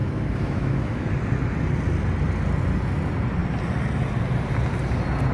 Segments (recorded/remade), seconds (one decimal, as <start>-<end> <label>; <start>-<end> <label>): 0.0-1.1 remade; 1.1-5.3 recorded